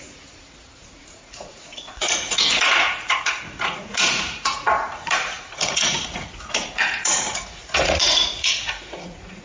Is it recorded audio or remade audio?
remade